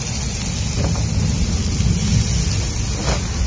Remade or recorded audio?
recorded